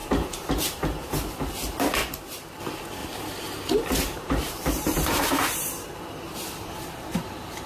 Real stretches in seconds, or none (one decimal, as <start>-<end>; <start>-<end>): 0.0-2.0; 2.6-3.0; 5.2-7.7